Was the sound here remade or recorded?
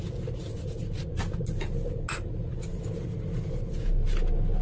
recorded